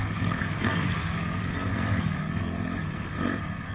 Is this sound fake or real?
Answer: fake